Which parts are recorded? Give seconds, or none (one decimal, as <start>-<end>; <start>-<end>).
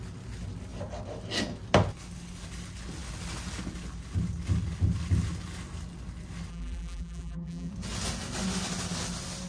0.0-6.5; 7.7-9.5